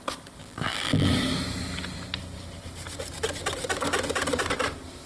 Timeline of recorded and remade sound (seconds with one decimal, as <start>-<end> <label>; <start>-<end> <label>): 0.0-0.4 recorded; 0.4-1.1 remade; 1.1-5.1 recorded